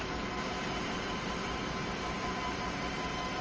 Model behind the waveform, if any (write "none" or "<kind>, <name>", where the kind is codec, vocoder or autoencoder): vocoder, BigVGAN v2